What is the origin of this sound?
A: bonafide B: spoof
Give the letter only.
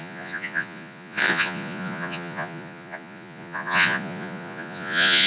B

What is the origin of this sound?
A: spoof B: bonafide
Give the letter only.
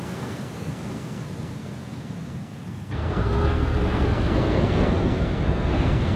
A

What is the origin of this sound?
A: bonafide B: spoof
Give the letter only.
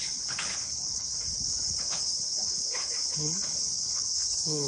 B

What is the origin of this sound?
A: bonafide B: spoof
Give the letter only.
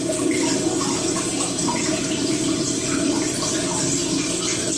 A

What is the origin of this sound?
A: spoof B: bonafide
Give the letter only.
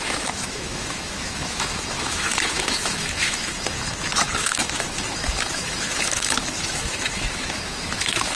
A